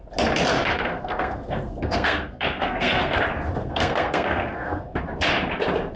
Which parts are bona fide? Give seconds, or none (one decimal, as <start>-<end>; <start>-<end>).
0.0-0.7; 3.2-3.6; 5.0-6.0